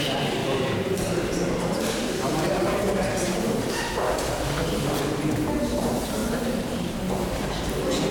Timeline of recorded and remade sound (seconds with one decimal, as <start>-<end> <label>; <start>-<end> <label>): 0.0-0.4 recorded; 0.4-3.8 remade; 3.8-6.2 recorded; 6.2-7.6 remade; 7.6-8.1 recorded